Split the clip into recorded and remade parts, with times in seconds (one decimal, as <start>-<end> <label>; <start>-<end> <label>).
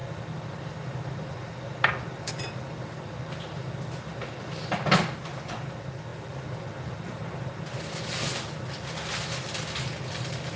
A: 0.0-10.6 recorded